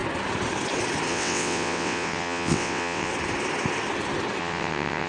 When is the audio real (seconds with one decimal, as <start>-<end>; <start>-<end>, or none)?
0.0-1.1; 3.1-4.4